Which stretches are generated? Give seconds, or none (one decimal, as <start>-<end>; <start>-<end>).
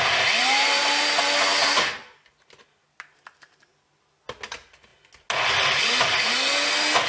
0.4-1.1